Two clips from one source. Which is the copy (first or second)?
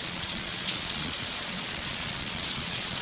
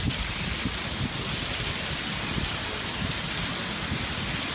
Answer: first